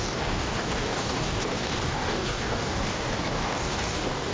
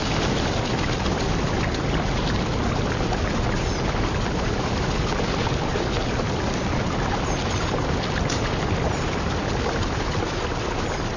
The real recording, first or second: second